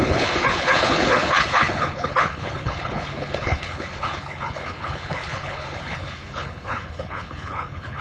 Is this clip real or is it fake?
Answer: fake